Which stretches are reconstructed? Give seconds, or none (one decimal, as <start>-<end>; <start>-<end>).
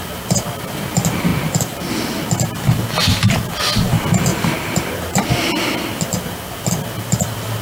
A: 1.3-1.9; 4.3-5.3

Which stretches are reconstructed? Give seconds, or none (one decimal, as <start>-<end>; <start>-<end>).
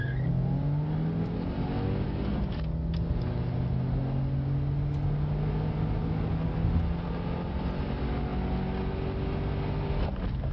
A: none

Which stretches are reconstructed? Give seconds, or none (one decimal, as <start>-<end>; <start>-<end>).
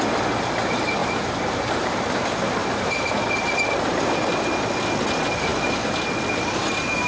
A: 1.0-2.1; 2.6-3.7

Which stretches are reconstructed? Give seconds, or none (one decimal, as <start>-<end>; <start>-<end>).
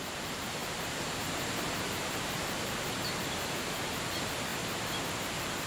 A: 0.0-4.5; 5.1-5.7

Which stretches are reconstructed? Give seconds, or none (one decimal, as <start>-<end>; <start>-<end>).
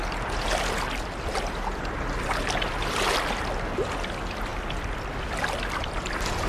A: none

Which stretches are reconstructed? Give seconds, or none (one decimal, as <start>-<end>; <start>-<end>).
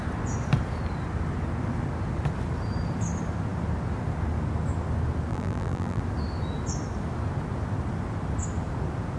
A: 5.3-6.0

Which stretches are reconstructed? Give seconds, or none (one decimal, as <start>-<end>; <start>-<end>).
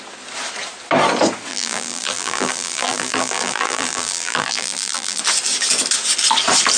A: 1.5-5.2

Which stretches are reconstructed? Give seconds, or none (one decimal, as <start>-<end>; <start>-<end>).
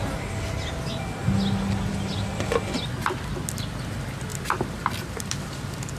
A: 4.3-5.4